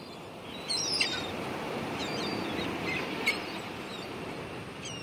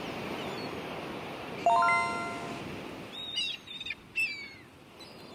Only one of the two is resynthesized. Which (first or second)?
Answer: first